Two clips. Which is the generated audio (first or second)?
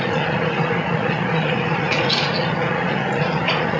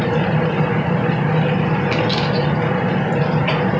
first